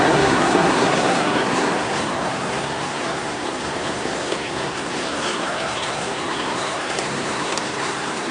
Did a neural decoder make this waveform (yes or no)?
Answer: yes